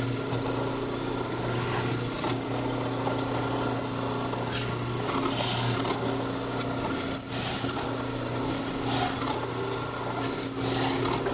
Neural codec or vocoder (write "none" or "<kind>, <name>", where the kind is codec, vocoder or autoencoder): none